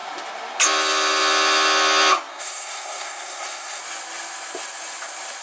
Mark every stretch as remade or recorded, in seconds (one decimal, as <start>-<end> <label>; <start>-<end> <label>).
0.0-2.3 recorded; 2.3-3.8 remade; 3.8-5.4 recorded